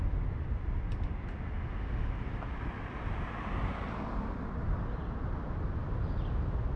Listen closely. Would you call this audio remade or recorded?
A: recorded